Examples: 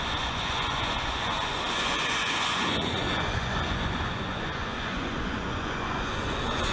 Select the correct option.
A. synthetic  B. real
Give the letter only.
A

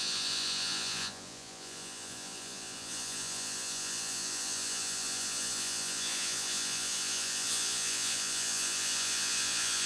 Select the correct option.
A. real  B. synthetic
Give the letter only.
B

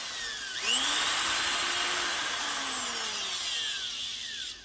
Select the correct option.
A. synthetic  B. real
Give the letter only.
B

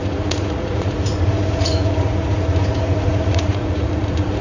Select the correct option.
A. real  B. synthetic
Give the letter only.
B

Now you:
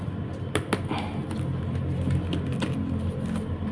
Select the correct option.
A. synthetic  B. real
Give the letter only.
B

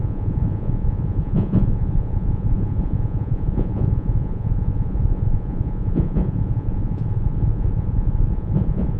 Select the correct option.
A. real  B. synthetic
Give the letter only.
B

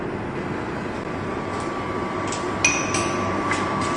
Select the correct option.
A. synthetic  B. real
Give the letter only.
B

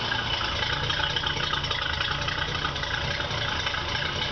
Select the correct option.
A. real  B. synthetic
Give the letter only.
A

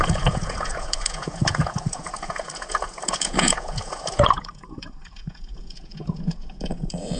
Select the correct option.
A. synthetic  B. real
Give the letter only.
A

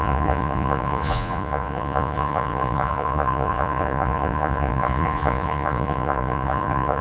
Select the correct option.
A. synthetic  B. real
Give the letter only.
A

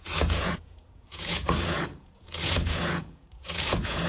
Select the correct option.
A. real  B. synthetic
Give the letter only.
B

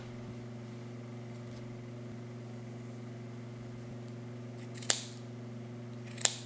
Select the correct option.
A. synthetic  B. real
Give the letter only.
B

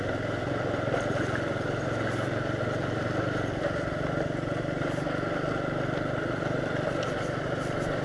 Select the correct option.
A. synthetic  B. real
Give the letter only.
B